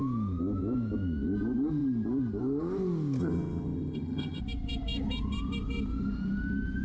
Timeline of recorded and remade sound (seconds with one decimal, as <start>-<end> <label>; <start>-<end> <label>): 0.0-3.2 recorded; 3.2-4.4 remade; 4.4-6.8 recorded